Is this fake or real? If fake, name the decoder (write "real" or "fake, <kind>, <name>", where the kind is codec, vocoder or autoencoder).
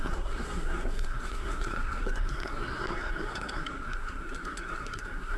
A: fake, codec, SNAC